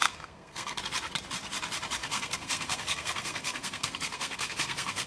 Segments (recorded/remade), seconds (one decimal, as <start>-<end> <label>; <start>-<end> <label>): 0.0-0.8 remade; 0.8-2.0 recorded; 2.0-5.1 remade